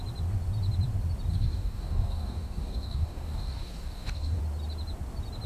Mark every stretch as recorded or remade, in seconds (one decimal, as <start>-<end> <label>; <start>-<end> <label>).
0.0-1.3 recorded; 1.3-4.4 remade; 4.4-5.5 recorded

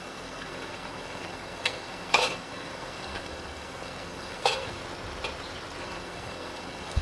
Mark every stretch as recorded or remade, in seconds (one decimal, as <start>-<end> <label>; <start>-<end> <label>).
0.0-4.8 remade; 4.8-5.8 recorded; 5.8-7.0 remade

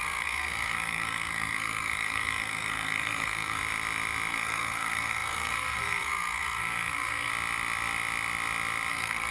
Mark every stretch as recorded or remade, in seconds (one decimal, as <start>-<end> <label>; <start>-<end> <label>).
0.0-3.6 remade; 3.6-4.3 recorded; 4.3-7.3 remade; 7.3-8.9 recorded; 8.9-9.3 remade

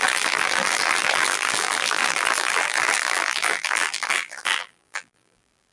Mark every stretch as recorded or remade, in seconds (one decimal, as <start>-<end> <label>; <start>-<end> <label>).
0.0-5.7 remade

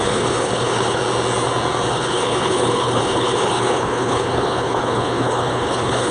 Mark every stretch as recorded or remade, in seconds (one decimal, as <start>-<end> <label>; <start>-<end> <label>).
0.0-1.0 remade; 1.0-1.9 recorded; 1.9-6.1 remade